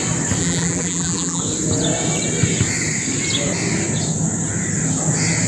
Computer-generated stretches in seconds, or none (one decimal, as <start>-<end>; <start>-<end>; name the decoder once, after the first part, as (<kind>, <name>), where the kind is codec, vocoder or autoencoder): 0.4-1.4 (vocoder, BigVGAN v2)